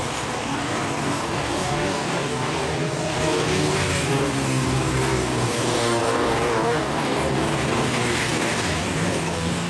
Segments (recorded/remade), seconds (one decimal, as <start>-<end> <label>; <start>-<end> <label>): 0.0-9.7 remade